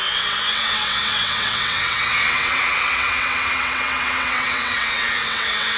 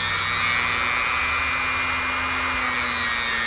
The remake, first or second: first